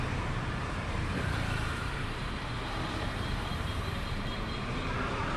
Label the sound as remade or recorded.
remade